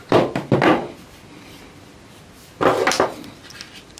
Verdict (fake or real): real